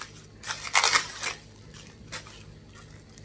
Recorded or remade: recorded